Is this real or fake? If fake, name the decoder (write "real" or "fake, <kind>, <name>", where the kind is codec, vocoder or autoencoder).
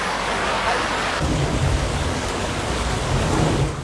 fake, codec, DAC